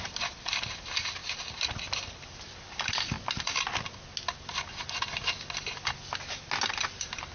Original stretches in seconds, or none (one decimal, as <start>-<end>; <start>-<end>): 0.0-7.3